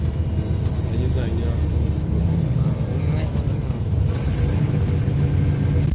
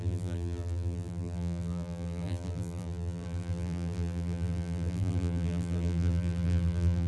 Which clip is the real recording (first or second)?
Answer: first